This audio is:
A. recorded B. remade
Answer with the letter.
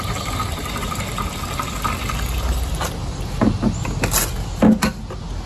A